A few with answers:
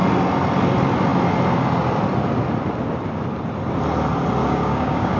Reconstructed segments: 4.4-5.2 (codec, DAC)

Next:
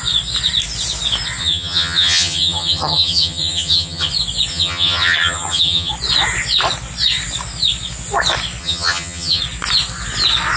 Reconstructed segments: 1.4-4.1 (vocoder, HiFi-GAN); 4.5-5.9; 8.6-9.4

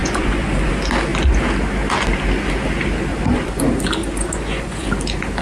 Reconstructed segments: 0.0-0.7 (vocoder, Vocos); 3.1-3.6; 4.0-4.9

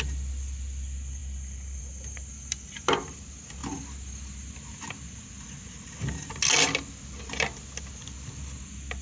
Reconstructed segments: none

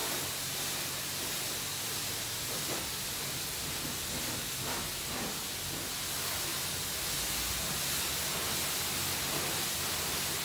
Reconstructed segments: none